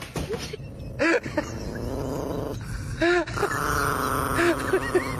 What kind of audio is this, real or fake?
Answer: real